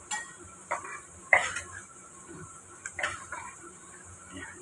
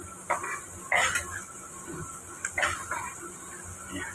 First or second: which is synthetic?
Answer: first